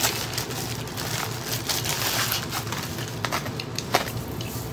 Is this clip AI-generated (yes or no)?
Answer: no